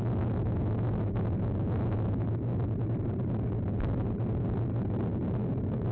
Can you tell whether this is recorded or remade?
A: recorded